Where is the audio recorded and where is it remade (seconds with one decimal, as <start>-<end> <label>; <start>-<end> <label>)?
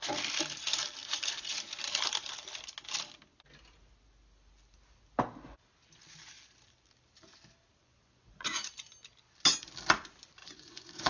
0.0-7.8 recorded; 7.8-8.7 remade; 8.7-10.4 recorded; 10.4-11.1 remade